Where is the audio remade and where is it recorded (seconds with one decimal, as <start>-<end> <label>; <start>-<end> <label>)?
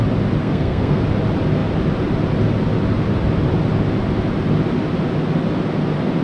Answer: 0.0-0.4 recorded; 0.4-1.0 remade; 1.0-6.2 recorded